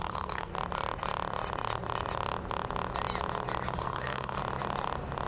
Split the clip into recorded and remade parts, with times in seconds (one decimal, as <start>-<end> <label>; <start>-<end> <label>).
0.0-0.5 remade; 0.5-3.7 recorded; 3.7-4.4 remade; 4.4-5.3 recorded